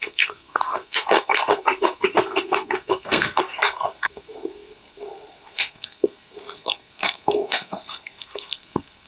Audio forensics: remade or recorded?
remade